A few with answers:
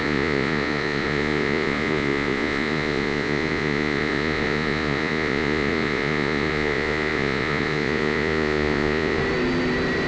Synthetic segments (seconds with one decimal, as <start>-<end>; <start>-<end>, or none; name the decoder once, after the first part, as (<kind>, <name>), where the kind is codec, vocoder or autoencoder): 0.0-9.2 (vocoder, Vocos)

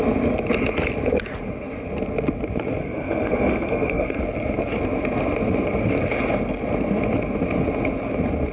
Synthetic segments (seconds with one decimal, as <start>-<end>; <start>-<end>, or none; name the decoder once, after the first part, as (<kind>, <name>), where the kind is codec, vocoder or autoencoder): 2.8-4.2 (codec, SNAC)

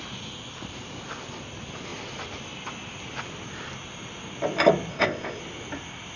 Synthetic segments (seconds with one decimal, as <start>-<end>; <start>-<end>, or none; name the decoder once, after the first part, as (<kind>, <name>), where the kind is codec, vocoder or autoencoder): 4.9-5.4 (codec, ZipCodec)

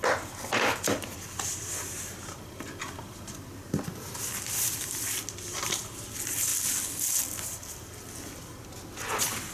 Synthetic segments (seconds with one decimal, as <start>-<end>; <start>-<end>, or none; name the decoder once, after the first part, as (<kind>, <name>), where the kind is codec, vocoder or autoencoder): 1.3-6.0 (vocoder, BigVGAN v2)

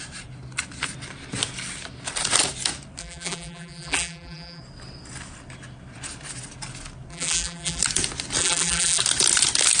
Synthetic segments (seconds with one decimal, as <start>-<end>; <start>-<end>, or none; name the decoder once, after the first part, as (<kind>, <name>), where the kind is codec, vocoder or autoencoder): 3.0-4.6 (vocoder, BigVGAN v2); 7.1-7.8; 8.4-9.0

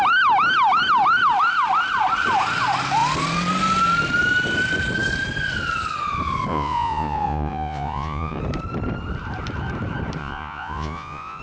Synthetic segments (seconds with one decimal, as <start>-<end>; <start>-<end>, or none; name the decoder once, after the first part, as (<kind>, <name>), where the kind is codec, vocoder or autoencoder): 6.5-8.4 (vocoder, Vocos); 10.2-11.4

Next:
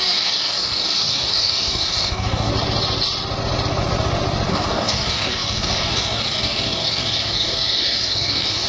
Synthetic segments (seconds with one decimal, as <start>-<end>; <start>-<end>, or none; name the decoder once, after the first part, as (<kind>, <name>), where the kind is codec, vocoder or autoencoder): 0.0-2.5 (codec, DAC); 4.5-8.7

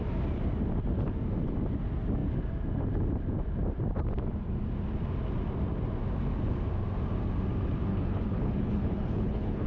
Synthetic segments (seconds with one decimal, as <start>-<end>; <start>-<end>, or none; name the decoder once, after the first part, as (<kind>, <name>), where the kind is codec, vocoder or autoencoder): 7.8-9.7 (codec, HILCodec)